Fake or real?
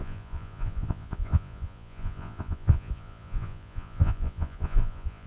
fake